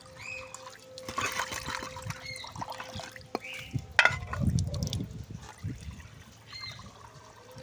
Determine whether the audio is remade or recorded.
recorded